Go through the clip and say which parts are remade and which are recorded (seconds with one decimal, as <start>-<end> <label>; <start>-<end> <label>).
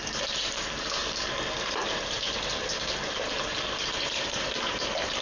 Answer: 0.0-1.0 remade; 1.0-1.6 recorded; 1.6-5.2 remade